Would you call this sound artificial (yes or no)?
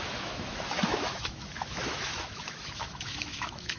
yes